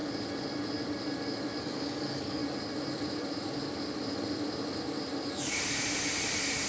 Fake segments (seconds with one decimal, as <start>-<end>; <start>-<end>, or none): 1.6-2.4